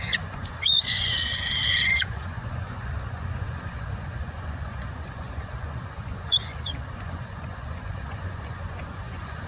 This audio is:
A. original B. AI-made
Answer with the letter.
B